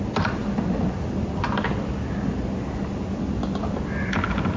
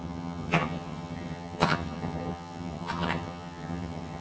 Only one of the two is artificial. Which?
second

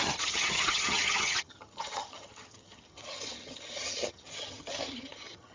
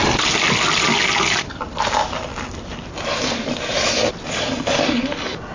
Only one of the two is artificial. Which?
first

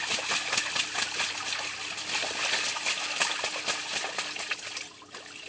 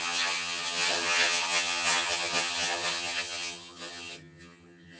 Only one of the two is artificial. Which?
second